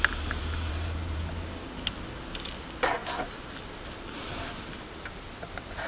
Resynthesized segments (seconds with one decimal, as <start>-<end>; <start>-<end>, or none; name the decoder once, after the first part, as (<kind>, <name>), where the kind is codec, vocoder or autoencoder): 0.4-1.2 (vocoder, BigVGAN v2)